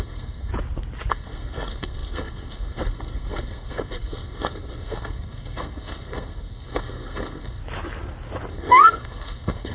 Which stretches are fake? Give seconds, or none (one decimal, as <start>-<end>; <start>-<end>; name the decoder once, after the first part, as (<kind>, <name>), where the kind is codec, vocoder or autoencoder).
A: 0.0-0.5 (codec, SNAC); 1.1-7.6; 8.5-9.7